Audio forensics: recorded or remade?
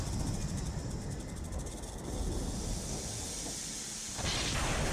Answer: recorded